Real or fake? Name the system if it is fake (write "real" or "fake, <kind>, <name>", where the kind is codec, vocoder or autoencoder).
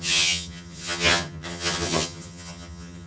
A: fake, vocoder, HiFi-GAN